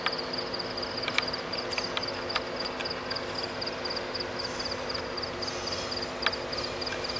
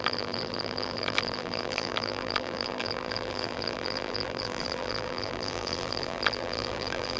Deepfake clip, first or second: second